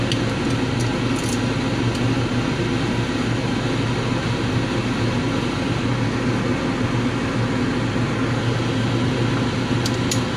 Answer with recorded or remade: recorded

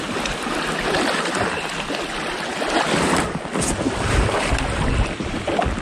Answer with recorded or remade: recorded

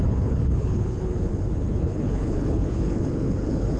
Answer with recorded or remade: remade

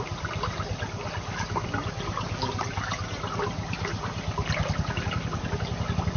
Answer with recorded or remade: recorded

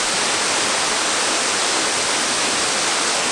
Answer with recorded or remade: recorded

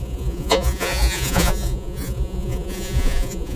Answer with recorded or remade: remade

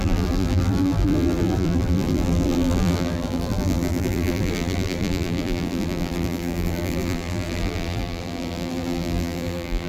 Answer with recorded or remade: remade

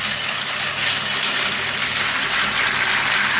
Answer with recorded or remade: recorded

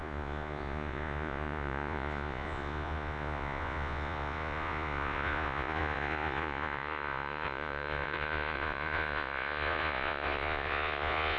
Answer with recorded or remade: remade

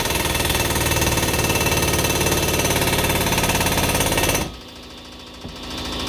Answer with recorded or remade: recorded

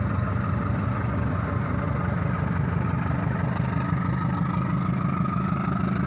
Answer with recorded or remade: recorded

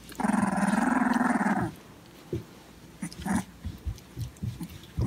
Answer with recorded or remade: recorded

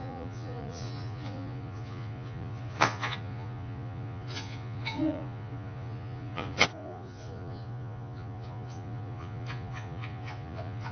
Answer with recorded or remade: remade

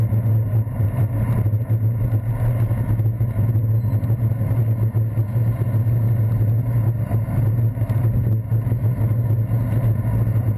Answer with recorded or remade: recorded